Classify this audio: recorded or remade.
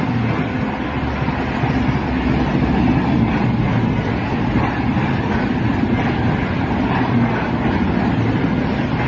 recorded